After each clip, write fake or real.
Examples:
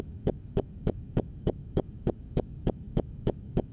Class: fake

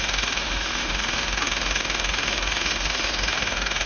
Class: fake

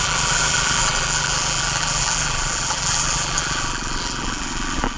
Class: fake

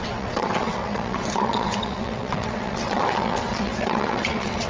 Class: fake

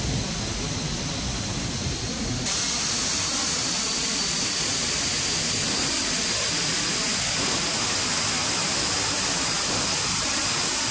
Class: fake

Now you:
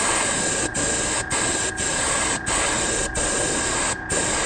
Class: real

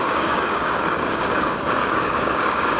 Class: fake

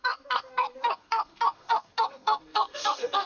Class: fake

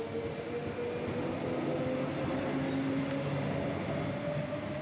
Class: real